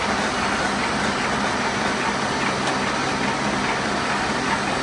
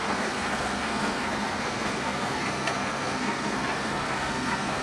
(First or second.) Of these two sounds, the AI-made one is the second